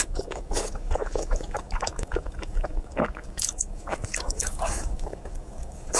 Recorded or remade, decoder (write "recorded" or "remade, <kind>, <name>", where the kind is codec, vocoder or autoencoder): remade, codec, DAC